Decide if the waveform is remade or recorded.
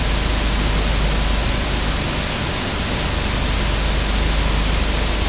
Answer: recorded